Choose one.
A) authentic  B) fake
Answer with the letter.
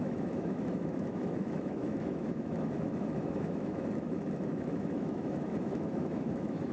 B